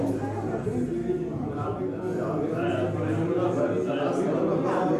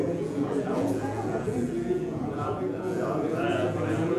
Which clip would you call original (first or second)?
first